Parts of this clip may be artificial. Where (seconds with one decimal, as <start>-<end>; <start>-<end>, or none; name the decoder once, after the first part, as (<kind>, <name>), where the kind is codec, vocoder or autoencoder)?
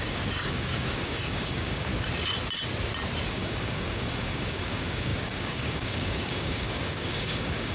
0.0-1.9 (codec, DAC); 3.3-7.7